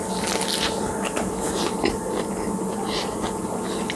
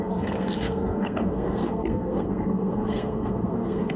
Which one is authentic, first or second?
first